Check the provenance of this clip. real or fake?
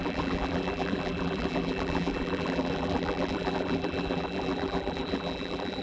fake